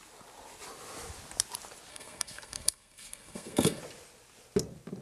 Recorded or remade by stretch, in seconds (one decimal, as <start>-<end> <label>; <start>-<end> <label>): 0.0-1.9 recorded; 1.9-3.8 remade; 3.8-5.0 recorded